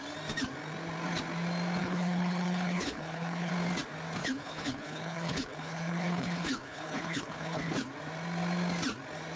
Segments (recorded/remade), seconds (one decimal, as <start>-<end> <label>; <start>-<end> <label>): 0.0-1.8 recorded; 1.8-3.5 remade; 3.5-4.2 recorded; 4.2-7.7 remade; 7.7-9.4 recorded